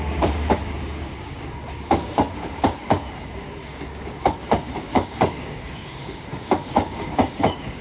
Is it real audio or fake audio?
fake